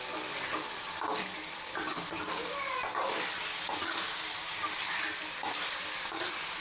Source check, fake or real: real